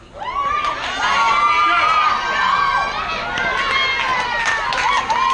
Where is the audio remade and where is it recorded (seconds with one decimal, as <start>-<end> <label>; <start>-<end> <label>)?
0.0-5.3 recorded